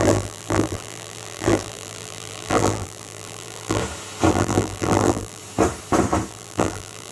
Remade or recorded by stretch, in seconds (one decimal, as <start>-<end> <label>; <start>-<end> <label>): 0.0-3.8 remade; 3.8-4.3 recorded; 4.3-5.4 remade; 5.4-6.3 recorded; 6.3-7.1 remade